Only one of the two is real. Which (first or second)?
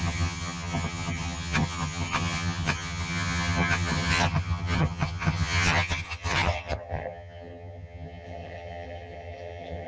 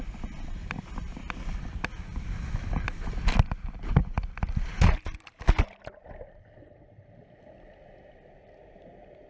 second